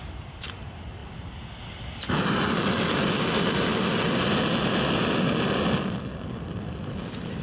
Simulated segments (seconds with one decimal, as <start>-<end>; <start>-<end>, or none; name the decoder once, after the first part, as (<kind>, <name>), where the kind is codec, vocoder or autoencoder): none

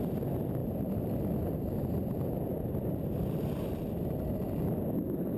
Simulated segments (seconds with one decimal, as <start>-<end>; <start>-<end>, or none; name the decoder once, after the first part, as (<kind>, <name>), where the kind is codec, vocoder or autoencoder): none

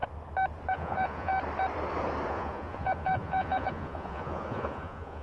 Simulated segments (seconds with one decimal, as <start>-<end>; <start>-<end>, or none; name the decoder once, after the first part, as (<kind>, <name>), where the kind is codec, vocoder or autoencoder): 0.7-1.3 (vocoder, Vocos); 2.3-5.2

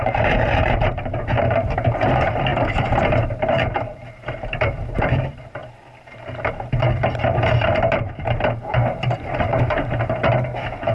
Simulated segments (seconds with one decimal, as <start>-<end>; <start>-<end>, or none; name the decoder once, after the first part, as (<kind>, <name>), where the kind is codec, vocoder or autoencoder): 0.0-5.6 (vocoder, BigVGAN v2); 7.9-10.9

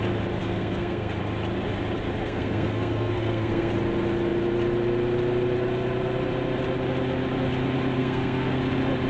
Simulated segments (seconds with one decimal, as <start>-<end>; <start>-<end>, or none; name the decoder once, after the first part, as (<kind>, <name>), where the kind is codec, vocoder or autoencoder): 0.4-1.2 (codec, SNAC); 2.2-3.7; 8.0-8.6

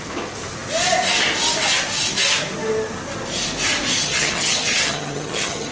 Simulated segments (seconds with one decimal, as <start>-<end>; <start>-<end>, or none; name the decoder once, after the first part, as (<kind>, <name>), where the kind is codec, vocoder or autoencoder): 4.0-5.7 (vocoder, HiFi-GAN)

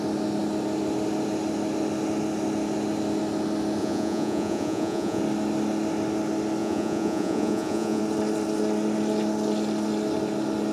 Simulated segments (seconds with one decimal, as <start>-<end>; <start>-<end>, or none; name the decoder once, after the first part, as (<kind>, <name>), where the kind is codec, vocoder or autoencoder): 3.8-5.2 (vocoder, Vocos); 6.6-8.0

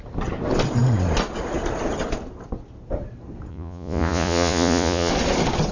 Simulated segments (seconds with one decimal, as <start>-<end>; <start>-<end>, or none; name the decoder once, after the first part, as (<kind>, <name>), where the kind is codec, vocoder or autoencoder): 3.5-5.1 (vocoder, Vocos)